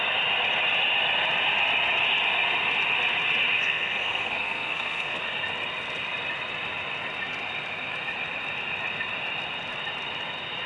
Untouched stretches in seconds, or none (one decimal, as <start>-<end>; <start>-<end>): 0.0-3.6; 5.2-10.7